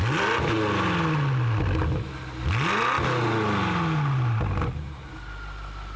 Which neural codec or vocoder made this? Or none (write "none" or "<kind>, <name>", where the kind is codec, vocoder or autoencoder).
none